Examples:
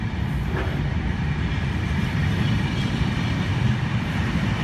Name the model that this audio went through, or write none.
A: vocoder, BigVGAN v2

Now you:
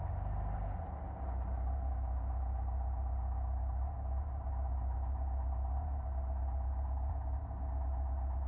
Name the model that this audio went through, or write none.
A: none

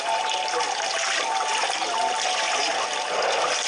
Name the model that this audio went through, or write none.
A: none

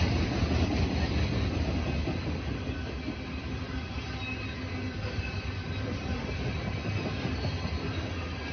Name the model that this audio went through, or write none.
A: none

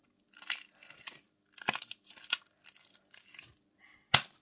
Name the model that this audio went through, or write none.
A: none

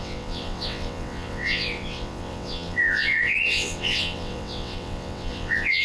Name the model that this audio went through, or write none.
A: vocoder, WaveNeXt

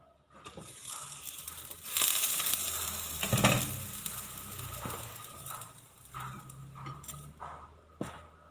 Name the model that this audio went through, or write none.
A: none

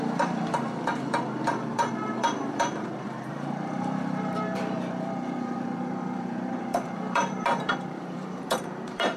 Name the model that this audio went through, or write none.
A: vocoder, BigVGAN v2